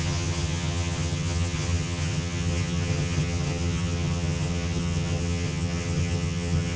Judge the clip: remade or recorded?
remade